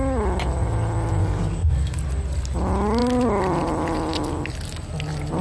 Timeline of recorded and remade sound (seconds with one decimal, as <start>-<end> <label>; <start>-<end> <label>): 0.0-1.2 recorded; 1.2-2.0 remade; 2.0-5.4 recorded